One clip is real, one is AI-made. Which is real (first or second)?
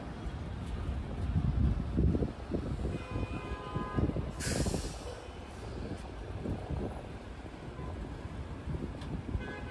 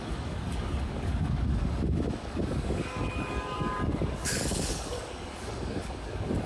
first